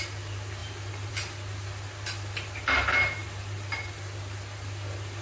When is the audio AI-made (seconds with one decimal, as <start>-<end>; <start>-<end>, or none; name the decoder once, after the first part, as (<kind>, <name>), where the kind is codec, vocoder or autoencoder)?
0.6-1.1 (vocoder, BigVGAN v2); 3.2-3.9